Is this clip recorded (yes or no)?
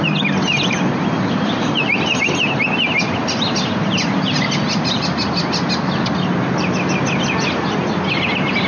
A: yes